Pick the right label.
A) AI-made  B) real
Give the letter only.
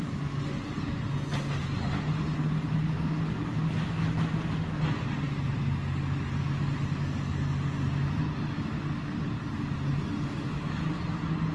B